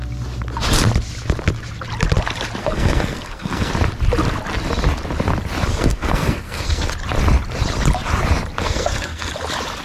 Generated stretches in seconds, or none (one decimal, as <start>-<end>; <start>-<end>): 2.6-3.7; 5.7-6.9; 8.6-9.3